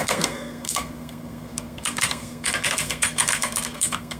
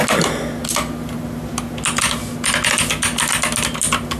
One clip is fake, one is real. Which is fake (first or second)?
first